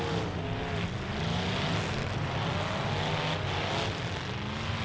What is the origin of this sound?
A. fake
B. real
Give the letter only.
B